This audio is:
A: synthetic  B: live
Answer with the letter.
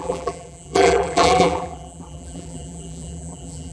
A